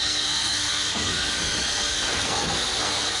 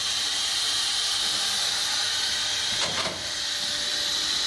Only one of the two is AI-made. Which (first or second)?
first